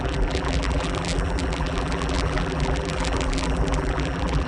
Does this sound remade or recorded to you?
remade